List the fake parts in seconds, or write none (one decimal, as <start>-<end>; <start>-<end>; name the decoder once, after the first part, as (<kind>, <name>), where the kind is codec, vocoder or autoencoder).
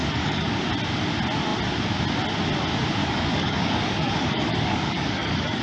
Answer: 0.0-0.6 (codec, DAC); 3.0-5.6